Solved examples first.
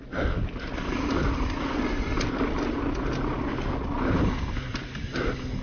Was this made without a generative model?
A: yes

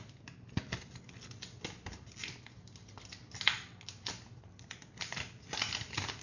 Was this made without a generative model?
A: yes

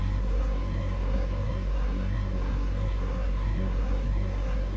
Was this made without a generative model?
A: no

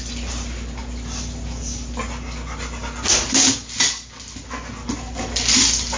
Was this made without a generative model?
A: yes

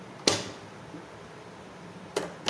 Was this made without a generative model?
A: yes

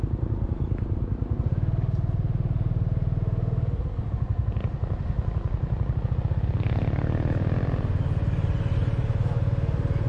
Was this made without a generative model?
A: yes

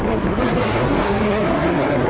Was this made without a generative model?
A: no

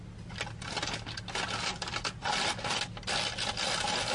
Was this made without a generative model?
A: yes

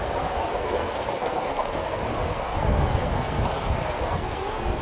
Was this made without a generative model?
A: no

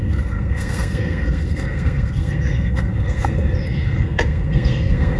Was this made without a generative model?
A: no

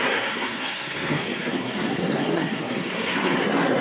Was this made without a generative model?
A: no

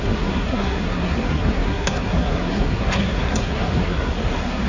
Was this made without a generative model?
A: no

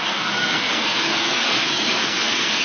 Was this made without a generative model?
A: no